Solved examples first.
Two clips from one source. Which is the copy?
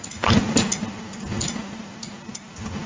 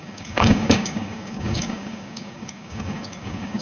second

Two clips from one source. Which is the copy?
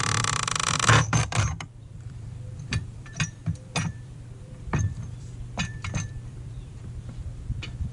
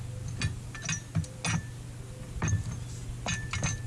first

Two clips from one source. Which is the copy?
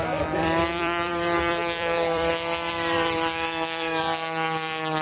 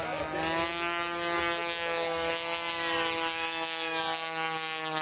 first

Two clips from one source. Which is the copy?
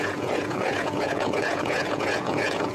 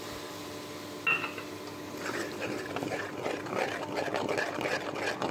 first